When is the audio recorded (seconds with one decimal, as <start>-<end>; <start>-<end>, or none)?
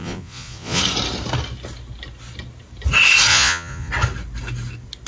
0.8-3.3; 3.9-5.1